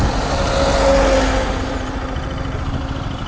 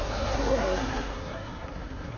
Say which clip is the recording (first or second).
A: first